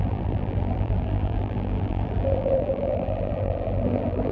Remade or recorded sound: remade